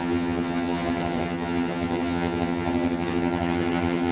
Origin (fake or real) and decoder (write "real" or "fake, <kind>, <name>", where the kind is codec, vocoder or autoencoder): fake, vocoder, HiFi-GAN